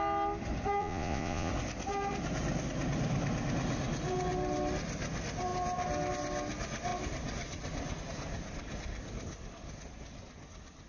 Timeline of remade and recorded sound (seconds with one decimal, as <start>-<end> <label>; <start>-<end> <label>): 0.0-0.8 recorded; 0.8-1.5 remade; 1.5-10.9 recorded